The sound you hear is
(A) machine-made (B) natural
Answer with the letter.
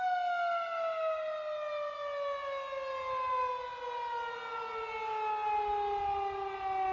B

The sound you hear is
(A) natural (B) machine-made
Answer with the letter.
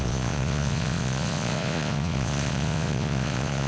B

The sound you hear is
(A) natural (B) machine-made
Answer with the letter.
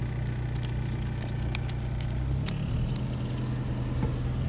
A